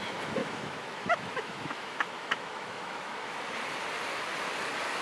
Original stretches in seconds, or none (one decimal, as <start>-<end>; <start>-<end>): 0.0-0.4; 3.4-5.0